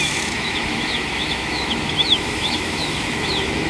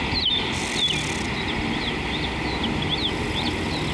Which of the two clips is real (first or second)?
second